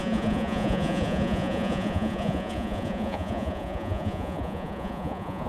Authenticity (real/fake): fake